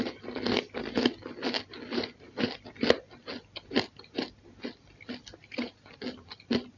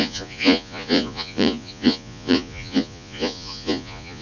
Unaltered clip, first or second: first